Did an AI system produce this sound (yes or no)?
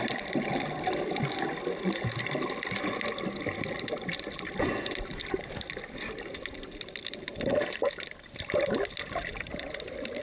no